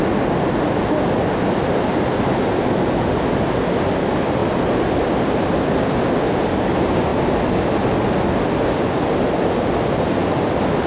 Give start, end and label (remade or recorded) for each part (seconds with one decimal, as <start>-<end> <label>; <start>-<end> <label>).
0.0-10.9 recorded